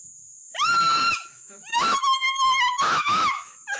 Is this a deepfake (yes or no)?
yes